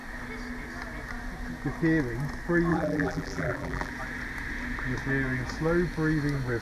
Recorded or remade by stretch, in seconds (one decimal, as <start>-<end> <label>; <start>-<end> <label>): 0.0-2.7 recorded; 2.7-3.9 remade; 3.9-6.6 recorded